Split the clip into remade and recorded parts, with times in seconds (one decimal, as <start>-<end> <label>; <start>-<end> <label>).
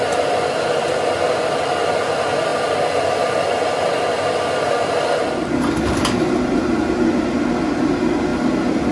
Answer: 0.0-2.5 recorded; 2.5-4.0 remade; 4.0-8.3 recorded; 8.3-8.9 remade